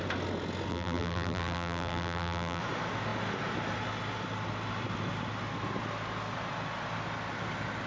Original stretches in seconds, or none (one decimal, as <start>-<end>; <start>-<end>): 0.0-0.7; 2.6-7.9